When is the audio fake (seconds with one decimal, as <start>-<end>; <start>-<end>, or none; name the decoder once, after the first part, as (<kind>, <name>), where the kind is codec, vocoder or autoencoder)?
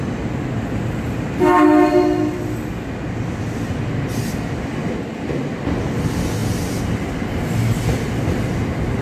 none